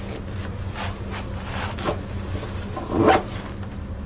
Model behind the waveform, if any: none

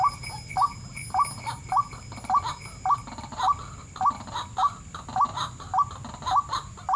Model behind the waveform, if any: none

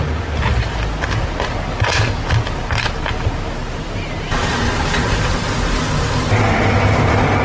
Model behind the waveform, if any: none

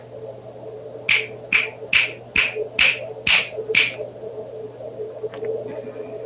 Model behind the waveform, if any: none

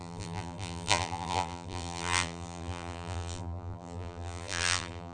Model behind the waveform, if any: vocoder, BigVGAN v2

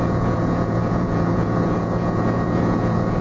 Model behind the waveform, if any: vocoder, Vocos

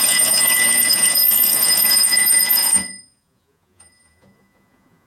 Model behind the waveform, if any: vocoder, Vocos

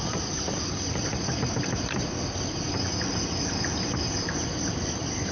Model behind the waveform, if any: none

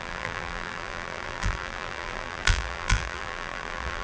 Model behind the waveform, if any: vocoder, BigVGAN v2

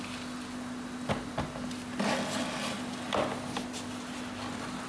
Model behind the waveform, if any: none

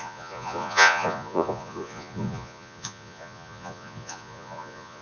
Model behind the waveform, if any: vocoder, Vocos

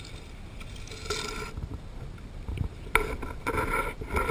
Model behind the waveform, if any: none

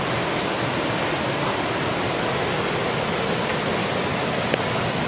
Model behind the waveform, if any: none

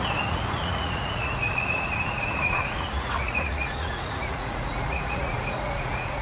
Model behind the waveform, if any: vocoder, Vocos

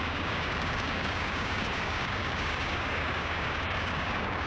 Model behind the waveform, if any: codec, DAC